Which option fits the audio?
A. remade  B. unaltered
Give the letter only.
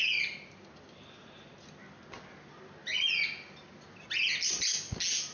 B